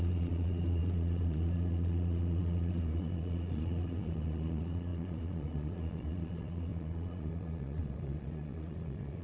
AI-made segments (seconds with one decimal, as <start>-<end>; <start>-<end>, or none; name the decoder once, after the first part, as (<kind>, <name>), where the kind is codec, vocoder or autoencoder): 0.0-9.2 (vocoder, Vocos)